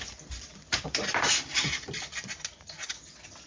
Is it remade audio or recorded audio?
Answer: recorded